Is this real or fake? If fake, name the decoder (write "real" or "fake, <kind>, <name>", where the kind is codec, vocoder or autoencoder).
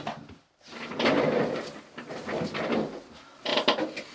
real